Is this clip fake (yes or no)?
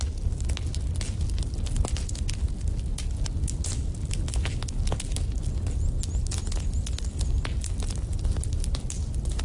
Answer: no